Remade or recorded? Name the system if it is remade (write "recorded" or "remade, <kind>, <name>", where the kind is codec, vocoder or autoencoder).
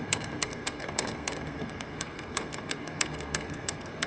remade, codec, SNAC